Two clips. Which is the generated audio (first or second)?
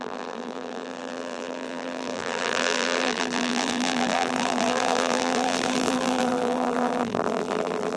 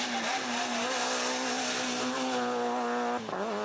first